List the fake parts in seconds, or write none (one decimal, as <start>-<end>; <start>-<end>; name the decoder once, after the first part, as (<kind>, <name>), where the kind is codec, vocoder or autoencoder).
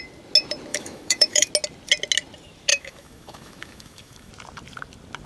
0.7-1.5 (autoencoder, DAC-VAE); 2.7-4.3